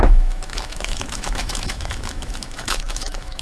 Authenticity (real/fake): fake